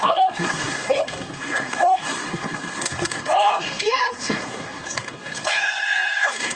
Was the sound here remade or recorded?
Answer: remade